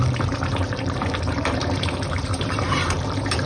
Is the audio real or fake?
fake